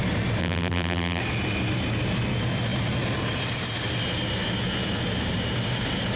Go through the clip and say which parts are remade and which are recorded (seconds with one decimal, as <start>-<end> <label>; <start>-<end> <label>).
0.0-0.4 recorded; 0.4-1.2 remade; 1.2-6.2 recorded